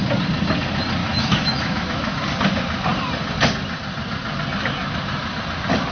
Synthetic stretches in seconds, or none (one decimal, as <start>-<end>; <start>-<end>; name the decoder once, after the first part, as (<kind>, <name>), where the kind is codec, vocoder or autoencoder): 1.0-2.2 (autoencoder, DAC-VAE)